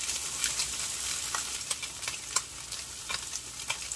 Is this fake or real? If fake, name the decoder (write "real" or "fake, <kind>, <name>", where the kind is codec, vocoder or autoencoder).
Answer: real